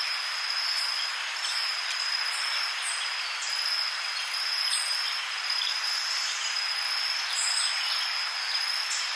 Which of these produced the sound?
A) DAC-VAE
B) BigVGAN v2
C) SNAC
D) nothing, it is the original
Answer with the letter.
D